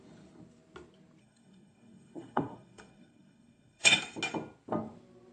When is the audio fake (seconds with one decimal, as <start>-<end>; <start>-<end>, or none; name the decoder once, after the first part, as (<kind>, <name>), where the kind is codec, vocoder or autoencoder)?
1.2-4.0 (codec, SNAC)